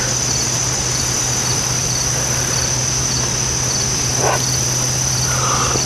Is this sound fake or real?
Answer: real